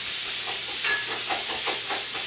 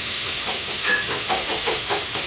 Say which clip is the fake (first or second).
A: second